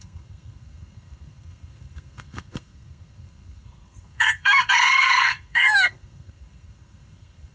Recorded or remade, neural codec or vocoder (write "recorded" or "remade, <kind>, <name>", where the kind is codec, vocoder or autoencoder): remade, codec, SNAC